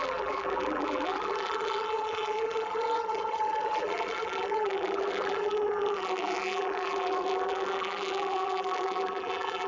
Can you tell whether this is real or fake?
fake